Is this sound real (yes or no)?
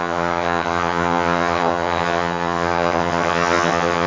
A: no